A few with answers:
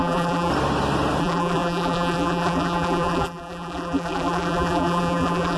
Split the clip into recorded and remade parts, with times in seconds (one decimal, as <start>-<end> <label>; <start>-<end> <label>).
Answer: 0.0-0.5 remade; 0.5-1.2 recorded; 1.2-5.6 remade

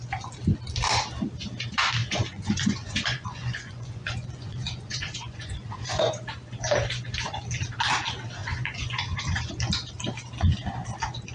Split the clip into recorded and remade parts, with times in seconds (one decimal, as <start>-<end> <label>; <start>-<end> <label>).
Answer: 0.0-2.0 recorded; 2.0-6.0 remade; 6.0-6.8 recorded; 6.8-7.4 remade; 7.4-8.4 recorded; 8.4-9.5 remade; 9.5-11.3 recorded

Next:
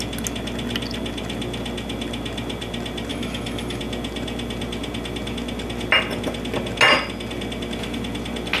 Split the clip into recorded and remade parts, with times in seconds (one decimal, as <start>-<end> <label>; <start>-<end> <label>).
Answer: 0.0-3.1 recorded; 3.1-3.8 remade; 3.8-8.6 recorded

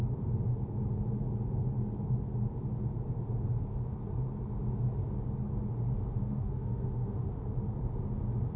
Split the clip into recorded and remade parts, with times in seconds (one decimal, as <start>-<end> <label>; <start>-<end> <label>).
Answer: 0.0-6.2 recorded; 6.2-7.4 remade; 7.4-8.6 recorded

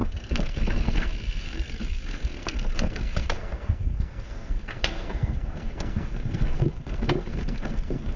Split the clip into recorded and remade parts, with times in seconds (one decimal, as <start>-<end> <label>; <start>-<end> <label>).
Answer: 0.0-8.2 remade

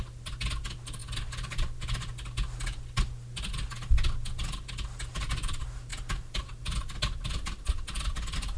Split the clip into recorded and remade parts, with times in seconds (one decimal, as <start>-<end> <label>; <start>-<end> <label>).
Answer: 0.0-8.6 recorded